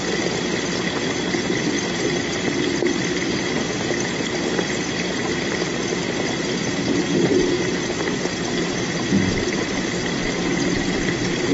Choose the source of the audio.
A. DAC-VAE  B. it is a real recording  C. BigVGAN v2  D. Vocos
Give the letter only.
B